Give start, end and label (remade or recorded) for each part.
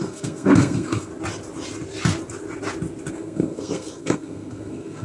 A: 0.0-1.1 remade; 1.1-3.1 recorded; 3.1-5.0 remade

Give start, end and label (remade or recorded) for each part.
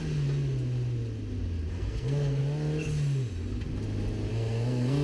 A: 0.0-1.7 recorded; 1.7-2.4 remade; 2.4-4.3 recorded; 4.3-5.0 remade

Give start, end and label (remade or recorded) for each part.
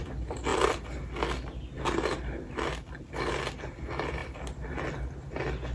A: 0.0-5.7 recorded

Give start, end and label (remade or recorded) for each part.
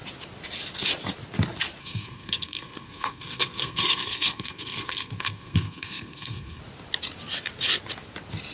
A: 0.0-1.8 recorded; 1.8-6.6 remade; 6.6-8.5 recorded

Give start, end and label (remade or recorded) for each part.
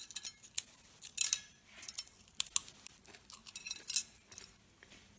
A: 0.0-5.2 recorded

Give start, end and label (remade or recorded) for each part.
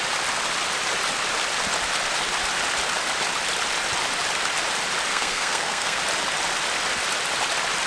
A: 0.0-5.1 recorded; 5.1-6.0 remade; 6.0-7.9 recorded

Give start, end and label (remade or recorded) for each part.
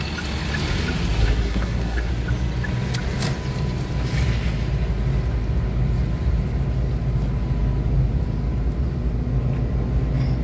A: 0.0-1.2 recorded; 1.2-2.1 remade; 2.1-10.4 recorded